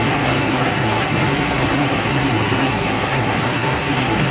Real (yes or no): no